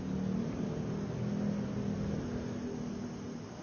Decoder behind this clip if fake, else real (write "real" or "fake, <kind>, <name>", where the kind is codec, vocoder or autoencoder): real